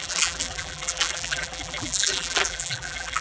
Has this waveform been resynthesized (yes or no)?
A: yes